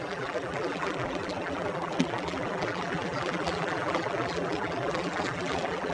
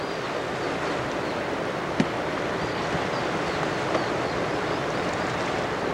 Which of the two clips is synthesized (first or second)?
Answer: first